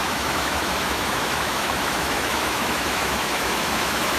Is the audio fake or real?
fake